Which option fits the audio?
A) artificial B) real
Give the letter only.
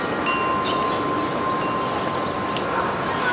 B